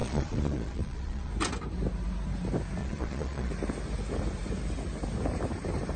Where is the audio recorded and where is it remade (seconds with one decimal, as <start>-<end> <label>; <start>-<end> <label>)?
0.0-1.3 remade; 1.3-2.8 recorded; 2.8-3.5 remade; 3.5-6.0 recorded